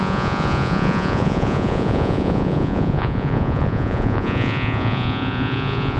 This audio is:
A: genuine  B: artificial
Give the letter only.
B